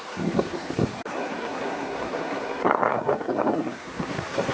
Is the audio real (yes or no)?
no